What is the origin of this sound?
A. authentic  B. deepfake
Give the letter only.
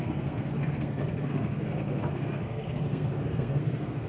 B